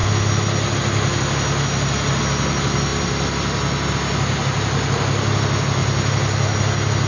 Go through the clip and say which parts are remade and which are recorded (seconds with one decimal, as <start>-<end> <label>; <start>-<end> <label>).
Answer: 0.0-7.1 recorded